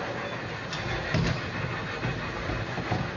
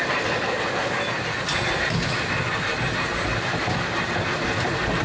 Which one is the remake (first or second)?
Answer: second